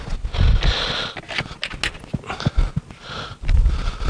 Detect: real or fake real